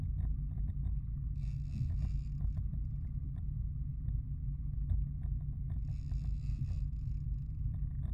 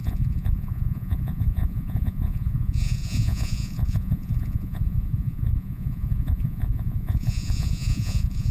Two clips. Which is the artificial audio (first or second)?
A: second